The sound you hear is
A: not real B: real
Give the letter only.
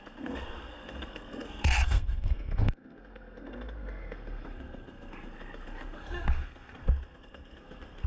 A